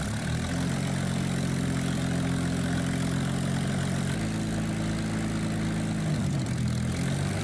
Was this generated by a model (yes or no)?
no